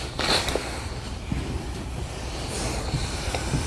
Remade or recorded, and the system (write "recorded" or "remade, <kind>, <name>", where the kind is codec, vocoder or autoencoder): recorded